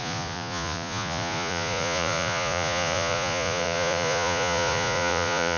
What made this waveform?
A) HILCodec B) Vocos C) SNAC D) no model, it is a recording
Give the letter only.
B